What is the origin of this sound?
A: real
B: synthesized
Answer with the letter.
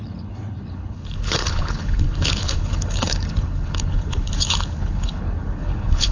B